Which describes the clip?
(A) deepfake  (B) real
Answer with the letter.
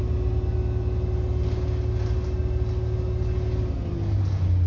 B